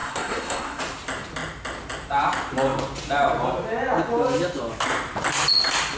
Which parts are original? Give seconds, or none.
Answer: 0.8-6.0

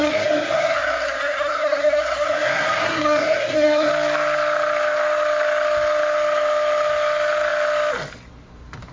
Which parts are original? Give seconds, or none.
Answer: 3.9-8.9

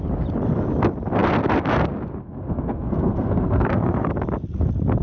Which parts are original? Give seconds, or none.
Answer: 0.0-2.2; 4.1-5.0

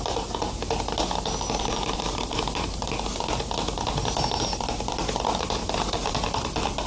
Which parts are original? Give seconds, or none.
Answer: 0.0-6.9